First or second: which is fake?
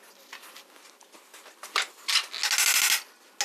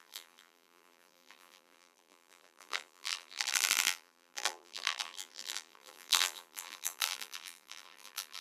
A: second